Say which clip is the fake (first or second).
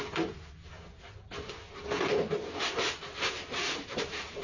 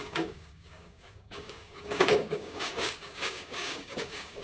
second